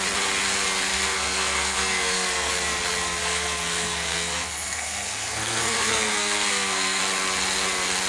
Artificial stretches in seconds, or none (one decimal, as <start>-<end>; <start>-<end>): 0.9-2.5; 3.2-7.0